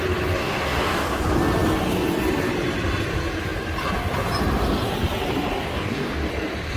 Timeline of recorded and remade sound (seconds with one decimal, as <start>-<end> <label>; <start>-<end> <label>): 0.0-0.4 recorded; 0.4-1.2 remade; 1.2-5.7 recorded; 5.7-6.3 remade; 6.3-6.8 recorded